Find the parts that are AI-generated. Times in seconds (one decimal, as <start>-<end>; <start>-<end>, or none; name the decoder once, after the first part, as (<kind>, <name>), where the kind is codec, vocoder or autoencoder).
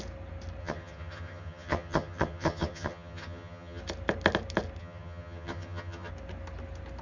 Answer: 0.6-3.8 (vocoder, HiFi-GAN); 4.8-6.1